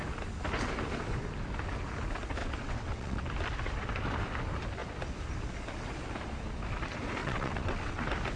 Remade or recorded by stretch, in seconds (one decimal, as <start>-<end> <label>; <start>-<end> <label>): 0.0-2.4 recorded; 2.4-3.2 remade; 3.2-7.2 recorded; 7.2-8.0 remade; 8.0-8.4 recorded